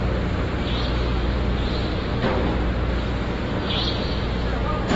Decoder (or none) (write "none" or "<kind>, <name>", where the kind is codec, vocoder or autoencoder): none